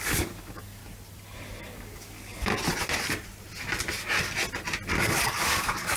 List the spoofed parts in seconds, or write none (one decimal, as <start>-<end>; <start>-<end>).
0.0-0.8; 1.6-2.5; 4.9-6.0